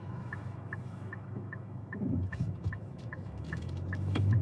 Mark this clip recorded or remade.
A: remade